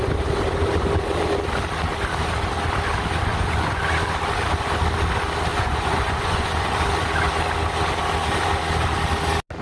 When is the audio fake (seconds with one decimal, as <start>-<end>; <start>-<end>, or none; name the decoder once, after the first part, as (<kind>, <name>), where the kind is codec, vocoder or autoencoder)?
3.3-3.8 (vocoder, Vocos); 5.5-6.8